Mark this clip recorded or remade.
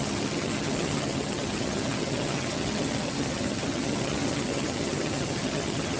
remade